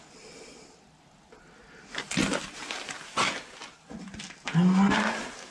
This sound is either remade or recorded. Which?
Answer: recorded